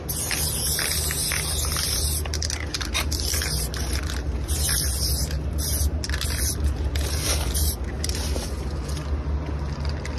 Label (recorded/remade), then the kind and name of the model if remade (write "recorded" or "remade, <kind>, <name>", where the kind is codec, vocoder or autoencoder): recorded